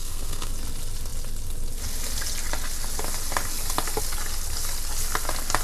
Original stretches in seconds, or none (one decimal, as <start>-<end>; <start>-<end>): 0.5-5.6